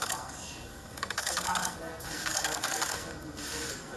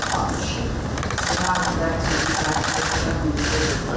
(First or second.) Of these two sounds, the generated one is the first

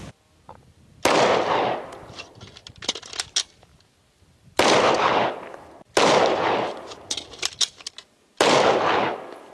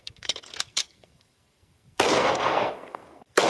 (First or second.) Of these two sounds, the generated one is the second